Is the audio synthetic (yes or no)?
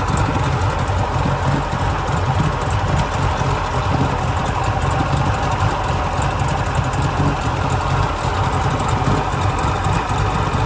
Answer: no